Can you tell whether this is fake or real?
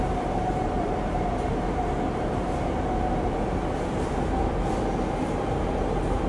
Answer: fake